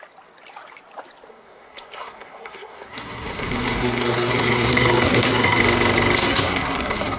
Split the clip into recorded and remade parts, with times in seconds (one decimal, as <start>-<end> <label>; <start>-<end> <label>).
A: 0.0-1.3 recorded; 1.3-5.6 remade; 5.6-6.2 recorded; 6.2-7.2 remade